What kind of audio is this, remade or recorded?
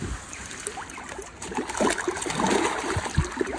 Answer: recorded